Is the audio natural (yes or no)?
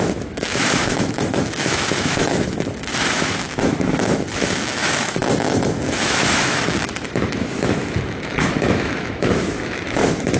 no